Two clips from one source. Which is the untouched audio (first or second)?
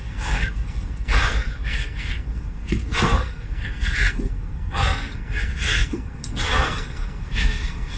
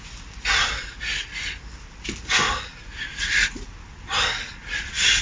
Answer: second